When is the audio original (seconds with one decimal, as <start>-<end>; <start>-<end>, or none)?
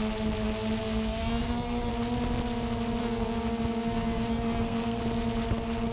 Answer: 0.0-0.8; 1.9-3.0; 5.0-5.9